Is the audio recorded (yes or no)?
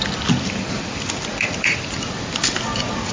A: yes